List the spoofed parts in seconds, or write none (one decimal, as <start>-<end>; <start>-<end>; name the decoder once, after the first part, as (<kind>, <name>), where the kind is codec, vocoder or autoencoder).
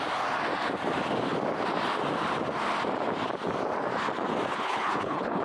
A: 4.5-5.4 (codec, HILCodec)